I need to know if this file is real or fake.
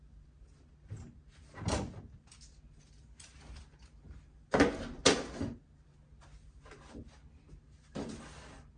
real